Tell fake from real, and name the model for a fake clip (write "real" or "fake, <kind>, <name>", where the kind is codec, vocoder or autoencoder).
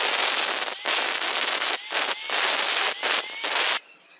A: real